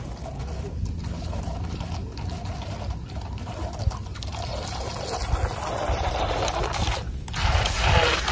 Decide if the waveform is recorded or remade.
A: recorded